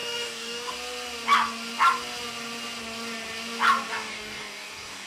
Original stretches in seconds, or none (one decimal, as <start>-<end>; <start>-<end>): 0.7-3.9